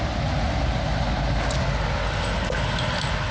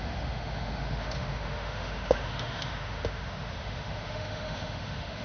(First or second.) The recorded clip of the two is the first